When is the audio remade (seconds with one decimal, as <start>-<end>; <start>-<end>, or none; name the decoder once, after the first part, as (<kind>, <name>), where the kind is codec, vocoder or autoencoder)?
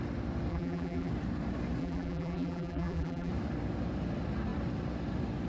0.5-1.1 (vocoder, BigVGAN v2); 1.8-3.3